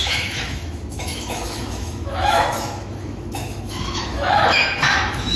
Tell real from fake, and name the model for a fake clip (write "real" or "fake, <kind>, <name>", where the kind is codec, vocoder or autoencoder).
fake, autoencoder, DAC-VAE